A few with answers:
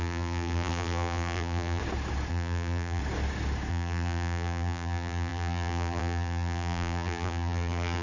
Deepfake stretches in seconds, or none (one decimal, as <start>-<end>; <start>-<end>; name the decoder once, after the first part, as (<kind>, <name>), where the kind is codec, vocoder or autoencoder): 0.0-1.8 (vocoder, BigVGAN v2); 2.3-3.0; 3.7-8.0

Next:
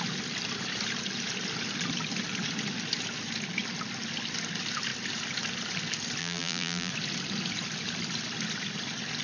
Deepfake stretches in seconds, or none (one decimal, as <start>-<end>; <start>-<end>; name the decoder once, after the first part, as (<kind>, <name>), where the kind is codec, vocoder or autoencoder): 6.2-6.9 (vocoder, BigVGAN v2)

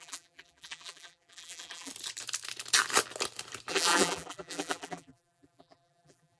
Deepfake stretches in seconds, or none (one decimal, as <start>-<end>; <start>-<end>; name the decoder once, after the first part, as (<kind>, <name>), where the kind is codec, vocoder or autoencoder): 0.0-1.9 (vocoder, BigVGAN v2); 3.7-6.4

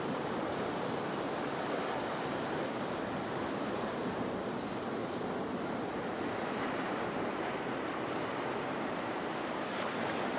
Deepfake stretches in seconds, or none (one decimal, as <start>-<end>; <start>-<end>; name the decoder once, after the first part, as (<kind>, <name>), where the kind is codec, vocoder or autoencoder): 0.0-5.0 (vocoder, BigVGAN v2); 6.3-10.4

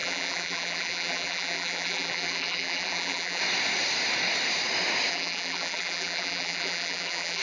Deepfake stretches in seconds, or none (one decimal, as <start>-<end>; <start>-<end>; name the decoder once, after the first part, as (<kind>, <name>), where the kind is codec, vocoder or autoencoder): 0.0-3.4 (vocoder, BigVGAN v2); 5.1-7.4